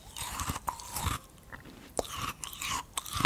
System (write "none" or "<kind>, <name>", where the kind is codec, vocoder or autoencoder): none